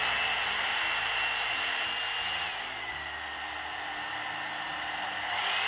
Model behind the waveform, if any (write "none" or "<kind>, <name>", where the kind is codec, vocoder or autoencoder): none